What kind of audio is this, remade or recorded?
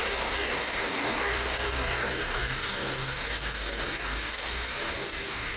remade